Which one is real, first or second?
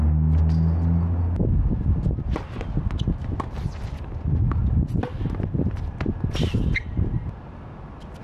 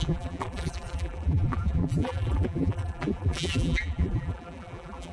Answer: first